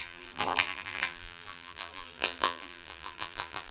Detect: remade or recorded remade